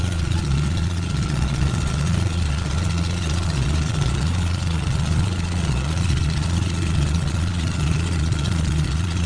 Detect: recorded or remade remade